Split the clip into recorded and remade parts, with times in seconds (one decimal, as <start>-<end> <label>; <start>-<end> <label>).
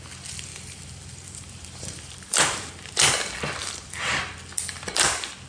0.0-0.5 recorded; 0.5-2.9 remade; 2.9-3.6 recorded; 3.6-4.2 remade; 4.2-5.5 recorded